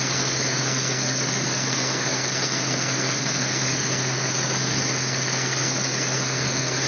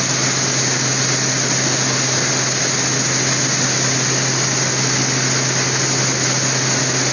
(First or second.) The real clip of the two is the second